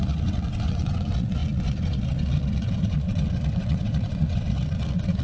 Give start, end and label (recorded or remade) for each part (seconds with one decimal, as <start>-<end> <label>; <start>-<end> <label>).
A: 0.0-5.2 remade